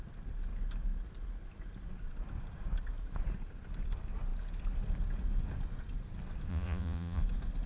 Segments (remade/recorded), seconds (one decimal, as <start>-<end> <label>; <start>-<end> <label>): 0.0-6.5 recorded; 6.5-7.2 remade; 7.2-7.7 recorded